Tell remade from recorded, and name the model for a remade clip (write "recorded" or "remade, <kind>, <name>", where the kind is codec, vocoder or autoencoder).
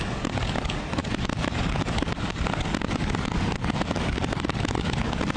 remade, codec, DAC